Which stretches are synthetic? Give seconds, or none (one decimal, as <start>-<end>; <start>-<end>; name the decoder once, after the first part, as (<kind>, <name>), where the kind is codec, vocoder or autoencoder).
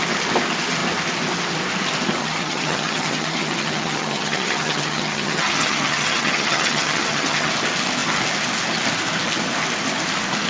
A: 2.2-7.5 (vocoder, HiFi-GAN)